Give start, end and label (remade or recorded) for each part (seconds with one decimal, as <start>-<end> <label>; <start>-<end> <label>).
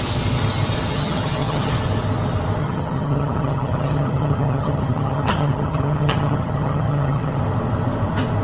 0.0-0.9 recorded; 0.9-1.7 remade; 1.7-2.6 recorded; 2.6-7.4 remade; 7.4-8.4 recorded